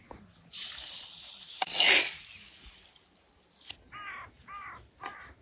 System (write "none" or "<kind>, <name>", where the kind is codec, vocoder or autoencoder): none